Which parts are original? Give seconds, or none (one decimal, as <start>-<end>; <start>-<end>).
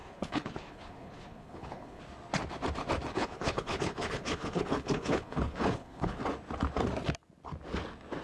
2.0-3.1; 6.2-8.2